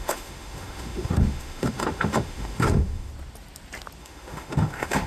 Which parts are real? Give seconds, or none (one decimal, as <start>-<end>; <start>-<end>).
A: 3.1-4.0